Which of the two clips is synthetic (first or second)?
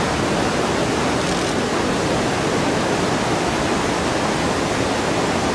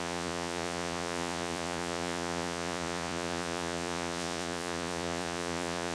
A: second